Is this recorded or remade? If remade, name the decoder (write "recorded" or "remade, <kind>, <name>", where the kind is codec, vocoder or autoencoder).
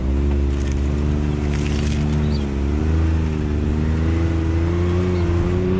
recorded